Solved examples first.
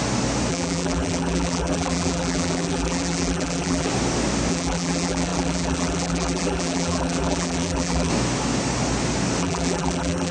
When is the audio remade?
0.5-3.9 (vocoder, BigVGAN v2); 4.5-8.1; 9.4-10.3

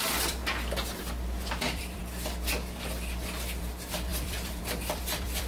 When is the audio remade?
0.0-0.4 (vocoder, BigVGAN v2); 1.5-2.0; 3.6-5.5

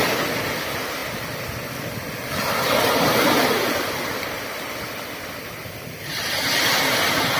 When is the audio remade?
5.6-6.5 (vocoder, BigVGAN v2)

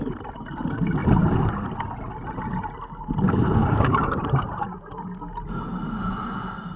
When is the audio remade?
3.6-4.2 (codec, DAC)

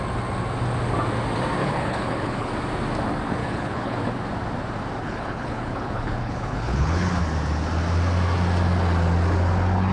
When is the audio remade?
1.6-2.5 (codec, HILCodec); 3.4-4.1; 5.0-7.2

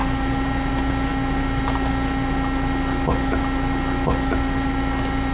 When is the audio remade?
none

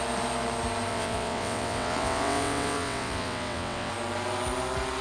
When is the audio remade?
0.9-3.9 (vocoder, WaveNeXt)